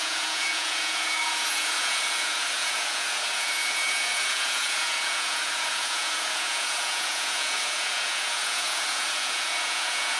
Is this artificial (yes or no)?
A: yes